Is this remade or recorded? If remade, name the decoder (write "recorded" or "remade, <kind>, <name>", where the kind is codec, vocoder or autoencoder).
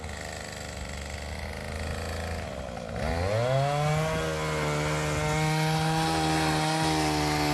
recorded